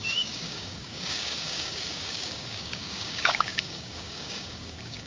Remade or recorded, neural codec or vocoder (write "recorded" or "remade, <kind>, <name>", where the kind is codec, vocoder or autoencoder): remade, codec, DAC